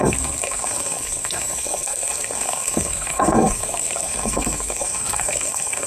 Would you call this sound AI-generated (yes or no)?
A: yes